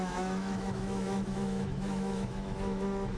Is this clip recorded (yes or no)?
no